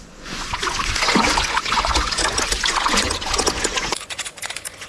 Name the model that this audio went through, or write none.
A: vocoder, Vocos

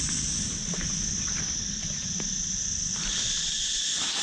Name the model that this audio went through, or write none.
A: none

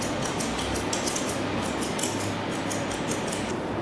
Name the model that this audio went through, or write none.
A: none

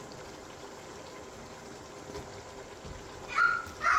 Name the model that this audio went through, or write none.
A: none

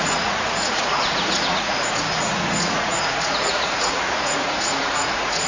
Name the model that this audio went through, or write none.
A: vocoder, Vocos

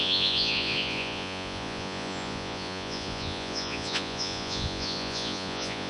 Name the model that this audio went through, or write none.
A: vocoder, Vocos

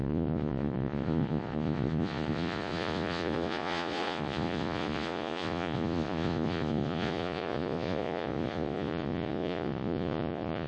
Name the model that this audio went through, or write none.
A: vocoder, Vocos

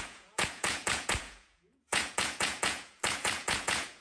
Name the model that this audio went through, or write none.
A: vocoder, Vocos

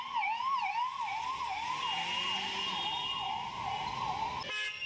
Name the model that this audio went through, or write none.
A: none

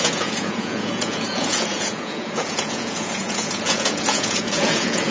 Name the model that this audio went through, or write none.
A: vocoder, Vocos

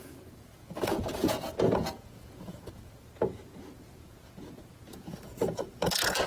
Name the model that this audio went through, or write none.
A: vocoder, Vocos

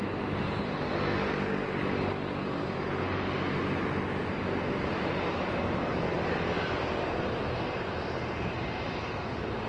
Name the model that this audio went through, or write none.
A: none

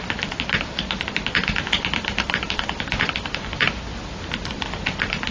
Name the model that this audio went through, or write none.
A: none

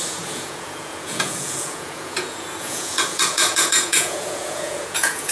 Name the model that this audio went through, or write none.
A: vocoder, Vocos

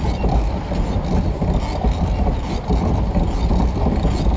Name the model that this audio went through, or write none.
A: none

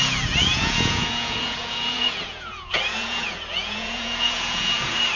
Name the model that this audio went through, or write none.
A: vocoder, Vocos